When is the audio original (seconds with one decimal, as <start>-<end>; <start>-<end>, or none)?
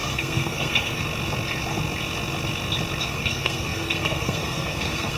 1.0-3.0